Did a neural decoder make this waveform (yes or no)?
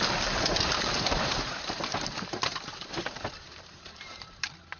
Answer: yes